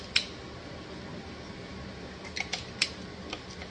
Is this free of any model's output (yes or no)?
yes